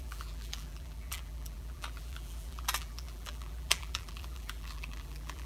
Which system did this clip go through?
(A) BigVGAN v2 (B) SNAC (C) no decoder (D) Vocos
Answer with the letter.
A